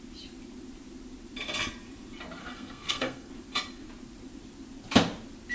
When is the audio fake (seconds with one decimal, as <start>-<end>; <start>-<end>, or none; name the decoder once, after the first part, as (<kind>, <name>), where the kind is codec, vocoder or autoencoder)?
2.4-3.3 (codec, SNAC)